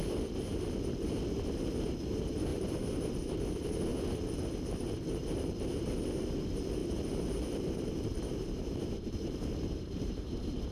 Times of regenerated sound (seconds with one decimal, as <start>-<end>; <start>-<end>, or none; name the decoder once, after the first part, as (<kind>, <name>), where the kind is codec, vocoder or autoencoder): 2.5-3.3 (vocoder, BigVGAN v2); 3.9-5.9; 6.8-10.7